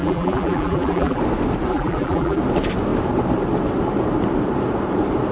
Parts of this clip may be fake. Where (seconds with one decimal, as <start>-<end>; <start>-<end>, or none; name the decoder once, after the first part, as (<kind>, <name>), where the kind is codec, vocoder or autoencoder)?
0.0-1.2 (vocoder, BigVGAN v2); 1.7-2.4

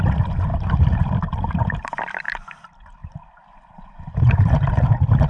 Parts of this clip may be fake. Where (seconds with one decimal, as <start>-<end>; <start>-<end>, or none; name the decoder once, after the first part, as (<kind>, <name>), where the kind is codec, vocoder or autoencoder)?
0.5-1.5 (vocoder, BigVGAN v2); 3.0-4.8

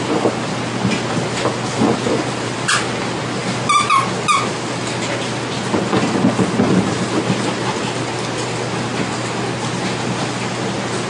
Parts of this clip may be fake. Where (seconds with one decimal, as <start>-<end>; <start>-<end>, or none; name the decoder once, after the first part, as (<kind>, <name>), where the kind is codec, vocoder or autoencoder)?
none

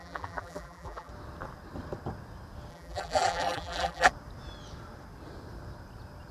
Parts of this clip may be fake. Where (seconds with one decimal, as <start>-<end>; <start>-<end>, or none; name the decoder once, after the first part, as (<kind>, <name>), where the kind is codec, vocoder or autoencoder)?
0.0-1.1 (vocoder, BigVGAN v2); 2.7-4.1